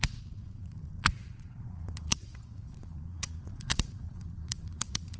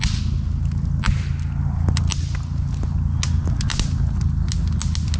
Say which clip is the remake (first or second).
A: first